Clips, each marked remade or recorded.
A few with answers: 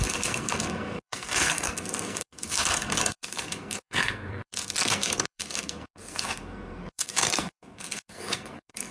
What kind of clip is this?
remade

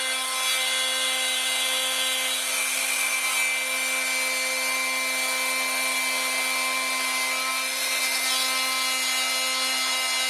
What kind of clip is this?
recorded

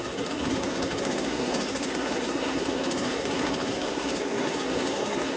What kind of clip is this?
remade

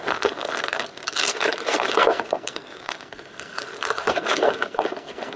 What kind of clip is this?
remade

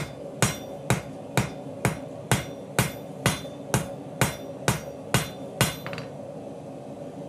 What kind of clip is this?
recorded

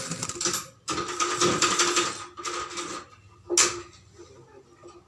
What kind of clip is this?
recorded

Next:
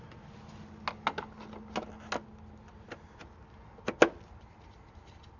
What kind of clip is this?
recorded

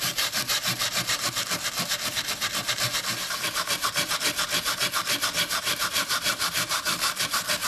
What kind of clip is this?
remade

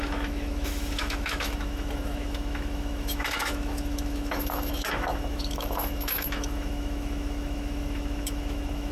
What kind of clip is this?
remade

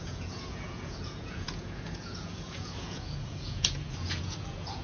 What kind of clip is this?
remade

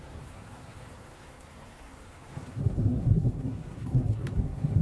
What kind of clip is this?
remade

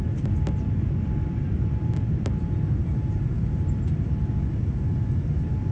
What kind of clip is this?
recorded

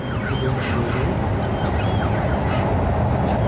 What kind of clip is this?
recorded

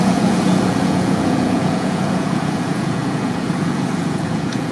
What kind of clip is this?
remade